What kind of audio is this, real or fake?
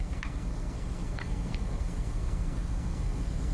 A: fake